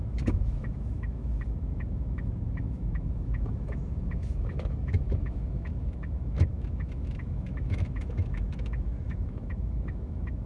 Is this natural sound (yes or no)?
no